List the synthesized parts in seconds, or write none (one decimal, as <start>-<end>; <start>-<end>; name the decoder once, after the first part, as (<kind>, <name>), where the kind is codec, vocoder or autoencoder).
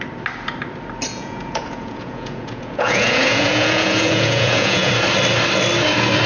1.1-4.9 (vocoder, Vocos)